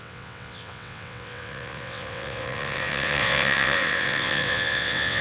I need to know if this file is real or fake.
fake